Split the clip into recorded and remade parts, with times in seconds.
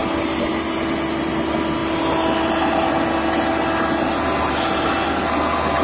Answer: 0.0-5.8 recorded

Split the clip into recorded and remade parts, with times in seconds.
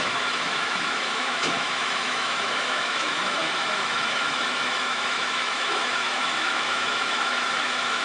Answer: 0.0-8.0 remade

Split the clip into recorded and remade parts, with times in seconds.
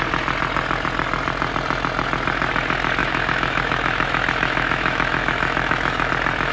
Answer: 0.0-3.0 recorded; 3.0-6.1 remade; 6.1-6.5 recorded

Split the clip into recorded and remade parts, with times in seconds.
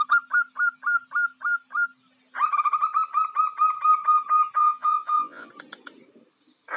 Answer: 0.0-4.6 recorded; 4.6-5.5 remade; 5.5-6.8 recorded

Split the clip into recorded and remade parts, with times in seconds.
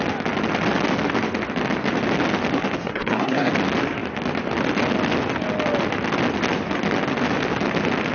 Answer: 0.0-2.8 recorded; 2.8-3.5 remade; 3.5-8.1 recorded